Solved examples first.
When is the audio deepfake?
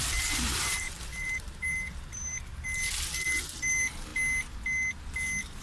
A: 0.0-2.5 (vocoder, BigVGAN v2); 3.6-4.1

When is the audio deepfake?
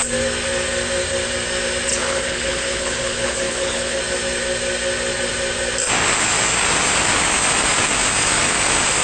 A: 1.9-4.0 (codec, HILCodec)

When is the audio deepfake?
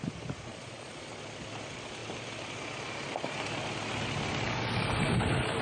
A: 0.5-1.1 (vocoder, Vocos)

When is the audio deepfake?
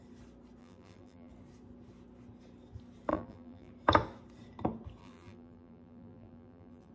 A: 0.6-1.3 (vocoder, BigVGAN v2); 3.1-3.7; 5.0-6.9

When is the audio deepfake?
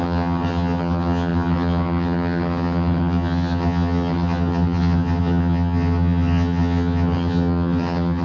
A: 0.0-8.2 (vocoder, HiFi-GAN)